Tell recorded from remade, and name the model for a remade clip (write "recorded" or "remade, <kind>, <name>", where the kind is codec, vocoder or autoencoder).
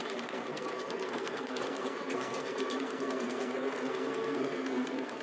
remade, codec, SNAC